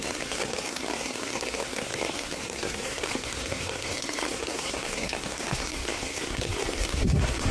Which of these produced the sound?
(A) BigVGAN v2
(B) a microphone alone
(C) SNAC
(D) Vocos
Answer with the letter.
C